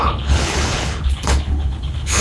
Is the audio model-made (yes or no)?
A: yes